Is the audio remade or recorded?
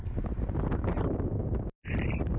recorded